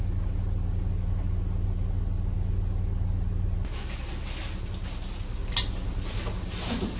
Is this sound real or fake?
real